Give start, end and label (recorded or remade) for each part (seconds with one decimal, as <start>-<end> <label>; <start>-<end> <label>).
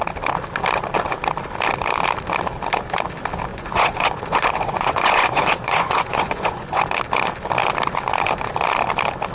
0.0-3.5 recorded; 3.5-6.8 remade; 6.8-9.3 recorded